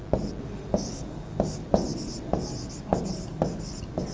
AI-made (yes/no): no